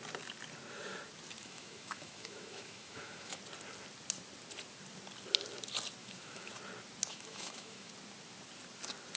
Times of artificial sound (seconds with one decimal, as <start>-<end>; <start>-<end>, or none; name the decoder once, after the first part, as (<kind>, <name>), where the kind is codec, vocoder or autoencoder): 1.4-3.4 (autoencoder, DAC-VAE); 6.0-6.5; 7.1-7.9